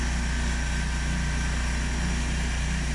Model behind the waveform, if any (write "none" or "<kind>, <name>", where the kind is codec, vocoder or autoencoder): none